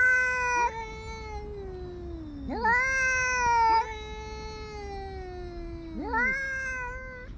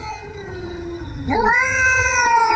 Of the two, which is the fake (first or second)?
second